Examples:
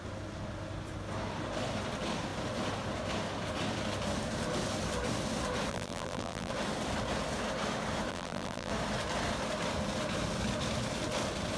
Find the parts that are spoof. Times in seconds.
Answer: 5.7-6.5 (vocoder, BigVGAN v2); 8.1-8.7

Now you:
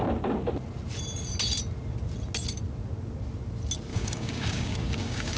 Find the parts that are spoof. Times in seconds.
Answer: 3.9-5.4 (codec, DAC)

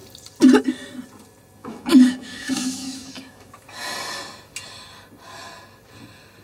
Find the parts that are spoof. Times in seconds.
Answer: 1.6-3.5 (autoencoder, DAC-VAE)

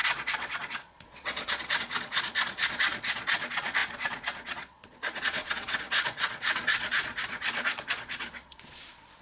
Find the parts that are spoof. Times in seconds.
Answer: 0.0-9.2 (vocoder, Vocos)